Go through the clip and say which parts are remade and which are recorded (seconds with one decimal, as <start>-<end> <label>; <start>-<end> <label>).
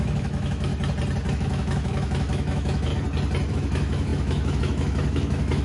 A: 0.0-0.7 remade; 0.7-1.3 recorded; 1.3-2.9 remade; 2.9-3.5 recorded; 3.5-5.6 remade